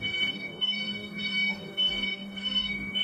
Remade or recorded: remade